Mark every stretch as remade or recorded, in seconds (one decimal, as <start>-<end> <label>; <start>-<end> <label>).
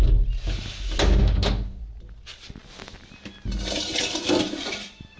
0.0-1.2 recorded; 1.2-1.8 remade; 1.8-5.2 recorded